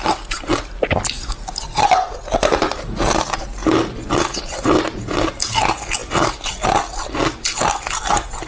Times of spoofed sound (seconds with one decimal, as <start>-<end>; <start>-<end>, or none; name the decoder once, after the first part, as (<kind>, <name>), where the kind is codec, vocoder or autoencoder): none